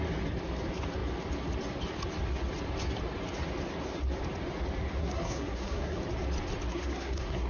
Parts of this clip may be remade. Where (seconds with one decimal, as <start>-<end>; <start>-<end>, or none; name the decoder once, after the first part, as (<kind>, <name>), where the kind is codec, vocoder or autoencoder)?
5.0-6.0 (codec, SNAC); 6.7-7.5